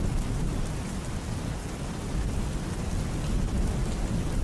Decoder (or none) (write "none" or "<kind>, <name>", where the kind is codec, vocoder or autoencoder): none